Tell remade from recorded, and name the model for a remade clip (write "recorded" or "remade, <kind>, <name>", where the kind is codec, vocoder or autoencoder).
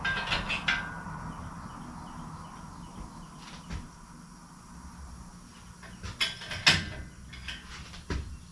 recorded